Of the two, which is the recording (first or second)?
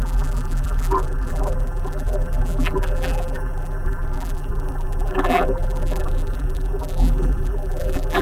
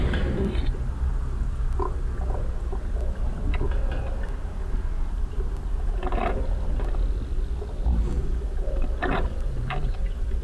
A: second